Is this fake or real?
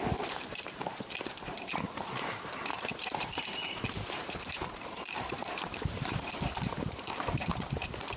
fake